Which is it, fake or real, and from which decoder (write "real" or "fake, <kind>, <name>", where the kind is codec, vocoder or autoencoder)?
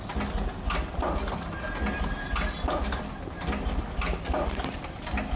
real